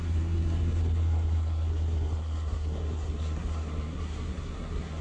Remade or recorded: remade